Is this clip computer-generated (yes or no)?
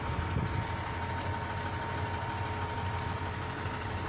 no